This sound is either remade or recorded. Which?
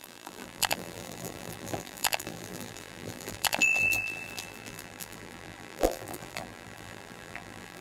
remade